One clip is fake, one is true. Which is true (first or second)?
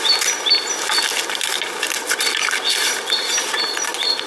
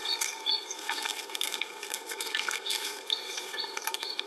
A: first